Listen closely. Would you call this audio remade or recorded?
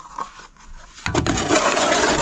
remade